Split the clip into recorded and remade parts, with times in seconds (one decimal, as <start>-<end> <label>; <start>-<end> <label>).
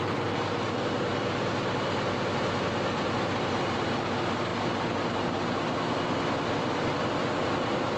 0.0-8.0 remade